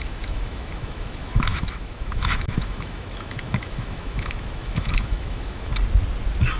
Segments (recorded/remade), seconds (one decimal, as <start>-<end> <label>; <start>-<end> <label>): 0.0-5.7 remade; 5.7-6.6 recorded